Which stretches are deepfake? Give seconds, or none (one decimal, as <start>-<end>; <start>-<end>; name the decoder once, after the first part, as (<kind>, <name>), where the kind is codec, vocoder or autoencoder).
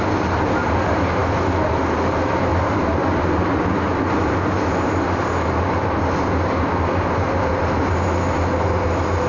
none